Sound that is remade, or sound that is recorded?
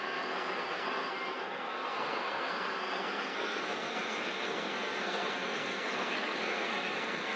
remade